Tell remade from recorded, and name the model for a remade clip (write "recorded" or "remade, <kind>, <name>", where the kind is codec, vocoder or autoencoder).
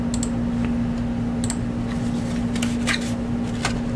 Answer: recorded